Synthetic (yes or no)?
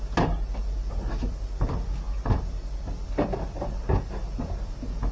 no